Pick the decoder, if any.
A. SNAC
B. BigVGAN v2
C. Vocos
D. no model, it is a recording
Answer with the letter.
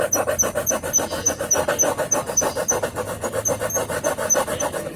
D